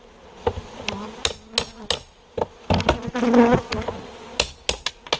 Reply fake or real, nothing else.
real